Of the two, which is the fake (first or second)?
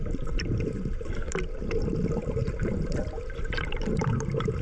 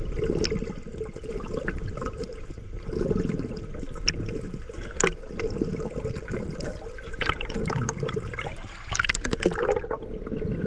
first